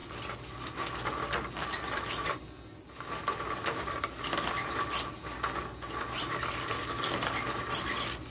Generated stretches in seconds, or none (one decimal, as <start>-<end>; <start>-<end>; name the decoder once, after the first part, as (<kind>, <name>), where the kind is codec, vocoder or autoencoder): none